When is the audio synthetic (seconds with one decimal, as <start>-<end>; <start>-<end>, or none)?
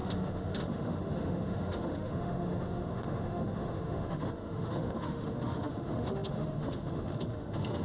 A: 0.0-7.8